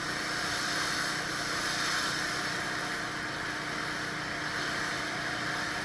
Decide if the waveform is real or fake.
real